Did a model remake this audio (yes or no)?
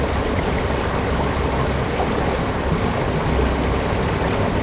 no